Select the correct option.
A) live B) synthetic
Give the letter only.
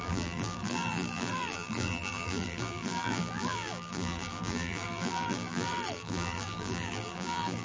B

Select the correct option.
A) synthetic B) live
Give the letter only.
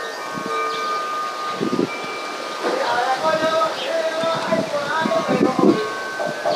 B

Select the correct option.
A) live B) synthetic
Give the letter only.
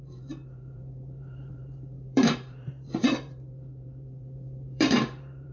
B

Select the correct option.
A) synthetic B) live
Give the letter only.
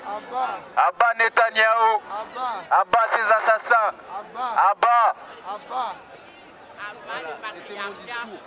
B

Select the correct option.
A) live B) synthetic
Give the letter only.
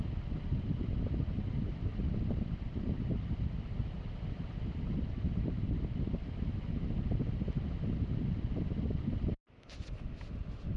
A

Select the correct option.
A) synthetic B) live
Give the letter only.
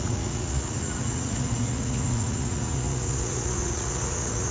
A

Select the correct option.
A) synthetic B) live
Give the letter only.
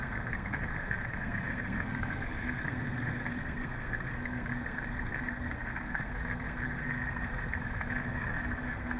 A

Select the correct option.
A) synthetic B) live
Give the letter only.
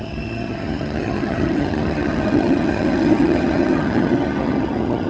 A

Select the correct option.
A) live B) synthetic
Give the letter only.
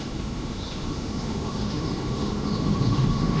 B